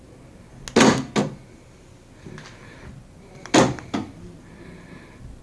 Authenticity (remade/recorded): recorded